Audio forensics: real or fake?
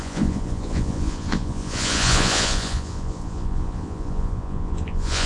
fake